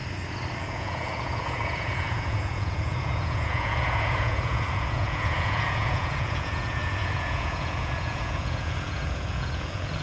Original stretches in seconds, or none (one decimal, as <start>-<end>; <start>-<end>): 0.0-0.6